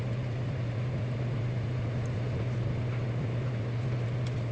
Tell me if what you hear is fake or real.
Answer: real